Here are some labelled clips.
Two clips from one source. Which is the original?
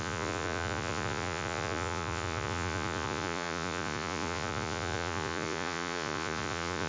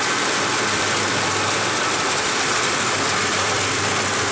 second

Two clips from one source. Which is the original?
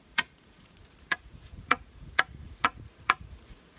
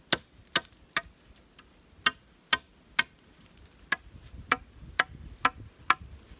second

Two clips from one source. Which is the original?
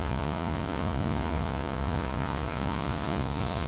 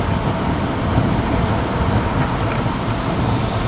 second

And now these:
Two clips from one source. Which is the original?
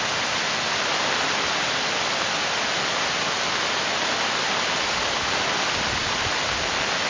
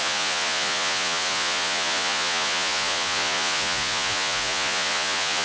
first